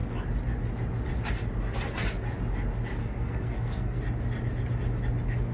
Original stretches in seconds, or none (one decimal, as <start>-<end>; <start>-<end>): 0.0-3.0; 4.0-5.5